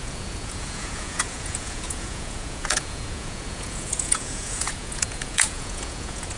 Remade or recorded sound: remade